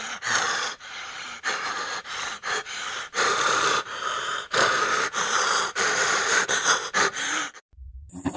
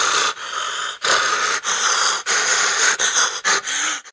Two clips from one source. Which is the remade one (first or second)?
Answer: first